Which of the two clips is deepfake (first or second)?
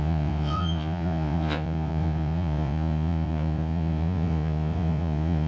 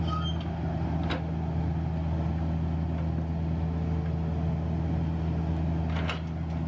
first